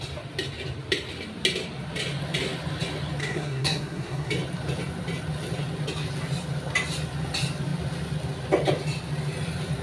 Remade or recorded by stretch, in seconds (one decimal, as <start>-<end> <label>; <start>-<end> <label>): 0.0-3.2 recorded; 3.2-4.3 remade; 4.3-9.8 recorded